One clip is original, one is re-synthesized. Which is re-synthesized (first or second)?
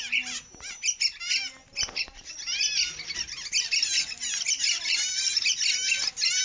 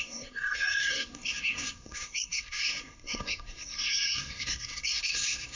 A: second